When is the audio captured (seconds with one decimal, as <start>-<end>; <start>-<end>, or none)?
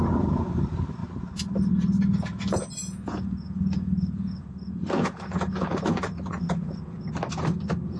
0.0-2.8; 7.1-8.0